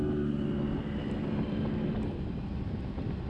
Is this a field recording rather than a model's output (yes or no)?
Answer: yes